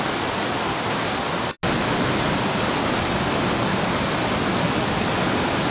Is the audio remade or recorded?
recorded